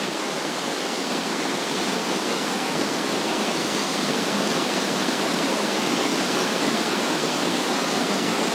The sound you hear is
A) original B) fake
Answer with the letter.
B